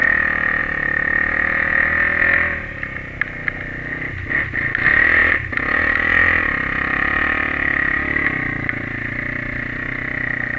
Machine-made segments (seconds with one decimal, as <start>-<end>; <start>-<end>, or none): none